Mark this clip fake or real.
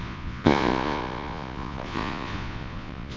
fake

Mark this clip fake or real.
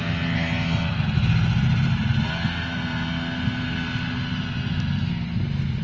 real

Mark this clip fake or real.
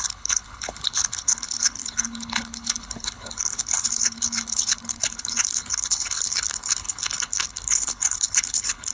fake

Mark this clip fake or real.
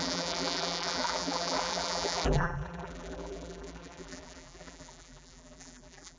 fake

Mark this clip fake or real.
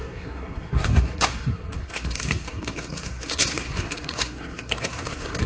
fake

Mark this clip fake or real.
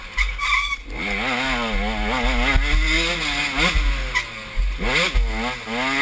real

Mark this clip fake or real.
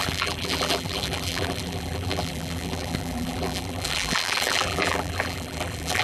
fake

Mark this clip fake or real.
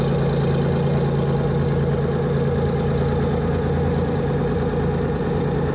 real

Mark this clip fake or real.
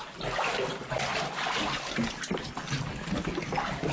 real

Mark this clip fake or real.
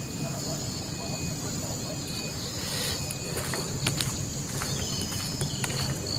real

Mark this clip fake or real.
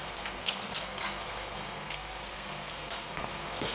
fake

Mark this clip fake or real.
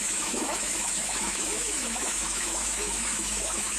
fake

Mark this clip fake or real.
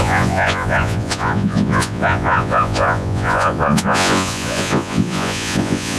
fake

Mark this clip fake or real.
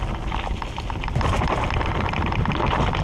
real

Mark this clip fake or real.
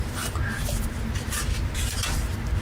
real